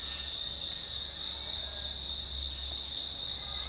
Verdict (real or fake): real